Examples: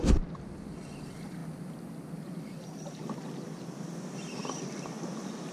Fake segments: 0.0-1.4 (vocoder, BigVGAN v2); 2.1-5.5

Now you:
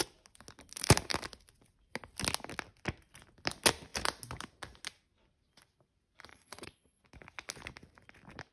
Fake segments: 6.3-7.0 (vocoder, Vocos)

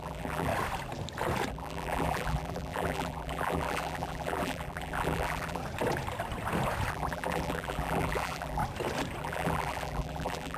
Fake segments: 0.0-0.5 (vocoder, BigVGAN v2); 1.5-5.6; 6.9-8.6; 9.2-10.6

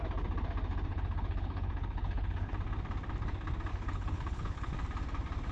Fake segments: 0.9-2.5 (codec, HILCodec); 3.7-4.7

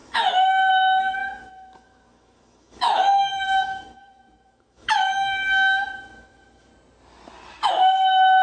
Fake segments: 0.0-6.7 (autoencoder, DAC-VAE); 7.7-8.4

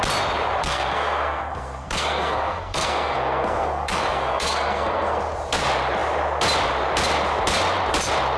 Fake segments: 0.6-5.2 (codec, SNAC)

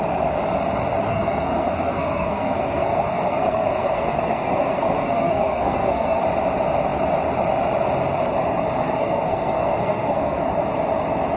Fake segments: 1.1-6.2 (codec, SNAC); 8.8-10.4

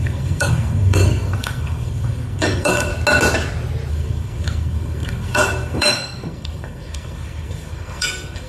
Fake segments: 0.0-2.9 (codec, SNAC); 3.9-8.5